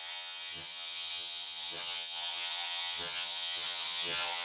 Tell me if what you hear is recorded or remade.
remade